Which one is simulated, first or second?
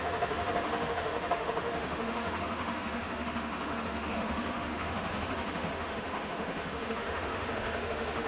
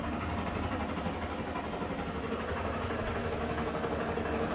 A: first